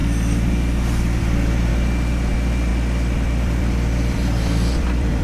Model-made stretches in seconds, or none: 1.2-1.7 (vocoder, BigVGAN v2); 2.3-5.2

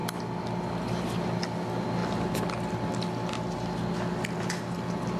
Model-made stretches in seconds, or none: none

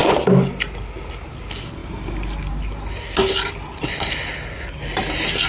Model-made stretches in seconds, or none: none

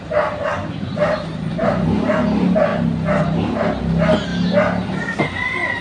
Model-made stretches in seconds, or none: 0.6-1.5 (vocoder, BigVGAN v2)

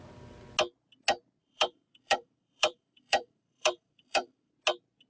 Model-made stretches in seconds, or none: 1.4-4.5 (vocoder, BigVGAN v2)

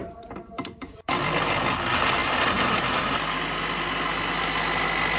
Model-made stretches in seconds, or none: 0.0-1.2 (vocoder, BigVGAN v2); 2.2-3.0